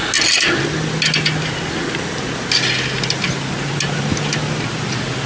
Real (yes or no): yes